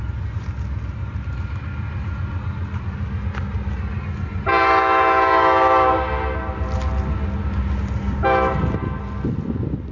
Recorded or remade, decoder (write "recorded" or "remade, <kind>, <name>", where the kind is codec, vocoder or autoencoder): recorded